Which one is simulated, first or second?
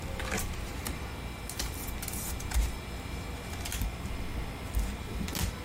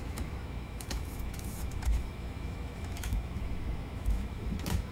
second